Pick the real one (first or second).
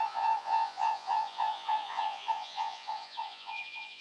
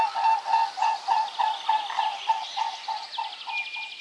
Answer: second